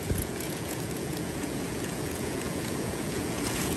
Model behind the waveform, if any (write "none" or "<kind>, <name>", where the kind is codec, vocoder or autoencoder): vocoder, Vocos